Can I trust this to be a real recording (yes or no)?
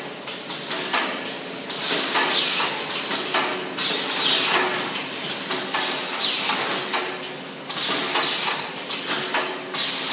yes